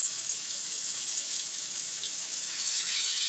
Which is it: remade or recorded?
remade